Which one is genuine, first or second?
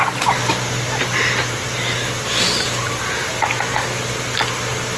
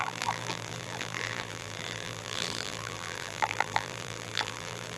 first